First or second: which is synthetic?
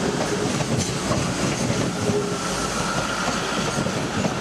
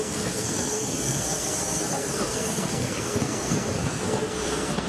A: second